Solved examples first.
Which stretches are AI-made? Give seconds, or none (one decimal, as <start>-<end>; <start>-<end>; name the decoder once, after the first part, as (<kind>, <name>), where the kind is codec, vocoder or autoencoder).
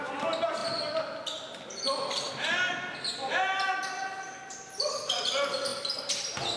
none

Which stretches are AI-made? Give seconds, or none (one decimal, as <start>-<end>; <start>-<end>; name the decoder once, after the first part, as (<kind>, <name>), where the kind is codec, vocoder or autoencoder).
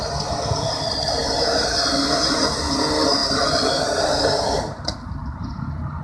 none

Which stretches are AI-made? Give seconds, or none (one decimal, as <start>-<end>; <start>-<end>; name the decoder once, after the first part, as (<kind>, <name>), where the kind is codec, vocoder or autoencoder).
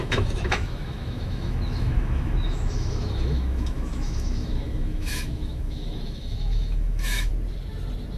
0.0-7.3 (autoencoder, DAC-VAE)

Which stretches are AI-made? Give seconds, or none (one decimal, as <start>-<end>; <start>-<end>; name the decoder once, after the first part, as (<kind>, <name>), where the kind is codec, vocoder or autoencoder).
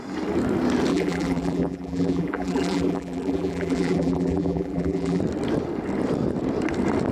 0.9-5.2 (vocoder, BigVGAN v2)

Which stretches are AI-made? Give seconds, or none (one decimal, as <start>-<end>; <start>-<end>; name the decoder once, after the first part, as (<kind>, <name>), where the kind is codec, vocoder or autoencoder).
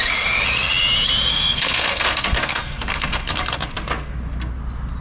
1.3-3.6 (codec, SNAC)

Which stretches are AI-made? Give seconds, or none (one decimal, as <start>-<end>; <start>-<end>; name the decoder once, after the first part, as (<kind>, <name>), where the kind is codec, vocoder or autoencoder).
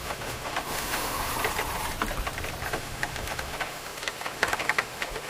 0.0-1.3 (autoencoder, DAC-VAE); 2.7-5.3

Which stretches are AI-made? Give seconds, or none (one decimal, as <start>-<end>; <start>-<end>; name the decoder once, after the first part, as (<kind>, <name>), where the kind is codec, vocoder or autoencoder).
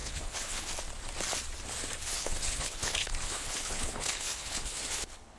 0.0-0.7 (codec, HILCodec); 2.1-5.4